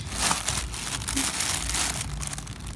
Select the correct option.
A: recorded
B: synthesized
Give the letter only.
A